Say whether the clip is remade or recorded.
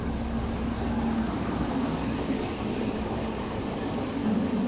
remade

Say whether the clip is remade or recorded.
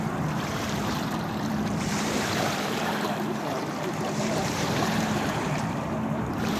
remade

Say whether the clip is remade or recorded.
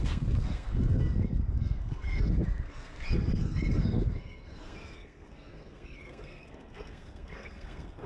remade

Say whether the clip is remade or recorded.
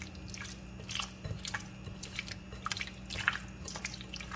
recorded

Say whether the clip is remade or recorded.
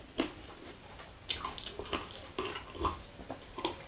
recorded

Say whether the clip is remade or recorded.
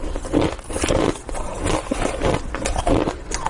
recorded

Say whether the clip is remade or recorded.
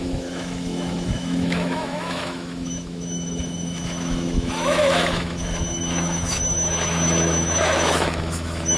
remade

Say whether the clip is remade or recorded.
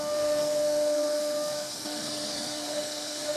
remade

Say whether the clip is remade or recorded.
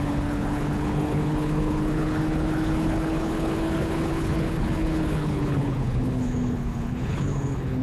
remade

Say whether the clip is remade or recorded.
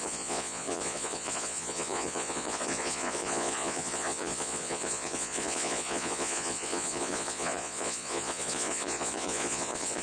remade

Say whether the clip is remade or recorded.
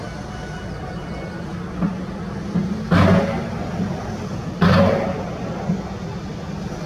recorded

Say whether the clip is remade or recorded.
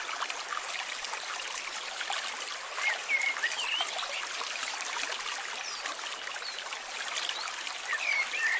recorded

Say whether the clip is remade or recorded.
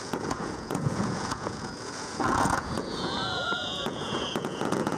remade